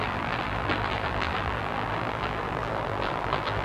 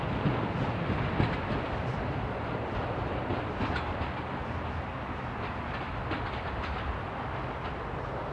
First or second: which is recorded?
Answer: second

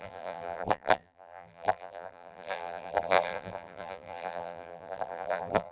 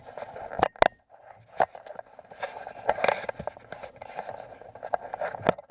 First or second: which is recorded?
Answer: second